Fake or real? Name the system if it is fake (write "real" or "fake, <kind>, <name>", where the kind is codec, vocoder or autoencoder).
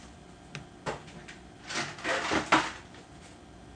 real